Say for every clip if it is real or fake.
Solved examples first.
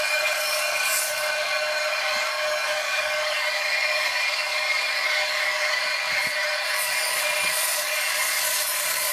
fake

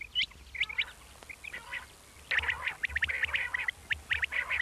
real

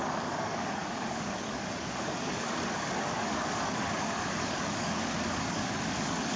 fake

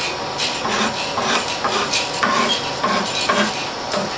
real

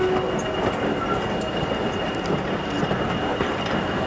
real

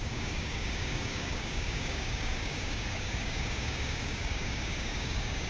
fake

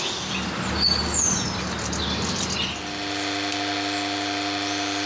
real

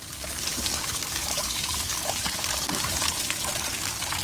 fake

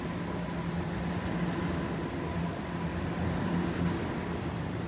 real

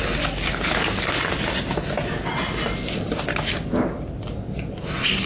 real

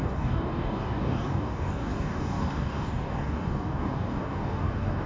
fake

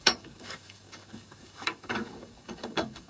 fake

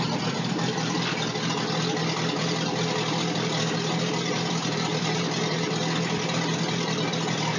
real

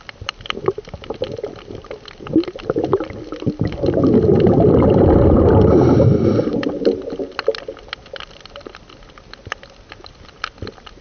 real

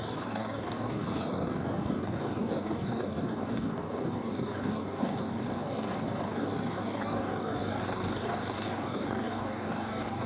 fake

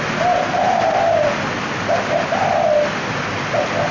real